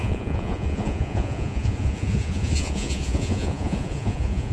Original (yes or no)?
no